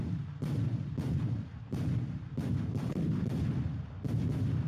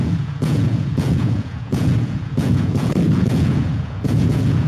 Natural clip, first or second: first